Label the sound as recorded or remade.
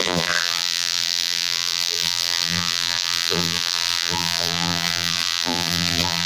remade